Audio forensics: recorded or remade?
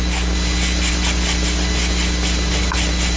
recorded